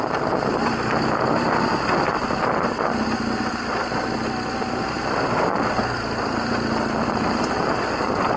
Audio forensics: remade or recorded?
recorded